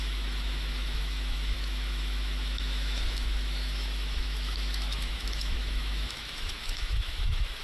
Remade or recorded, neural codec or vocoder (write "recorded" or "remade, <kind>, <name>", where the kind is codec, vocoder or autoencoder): remade, autoencoder, DAC-VAE